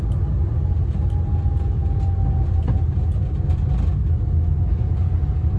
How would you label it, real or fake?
real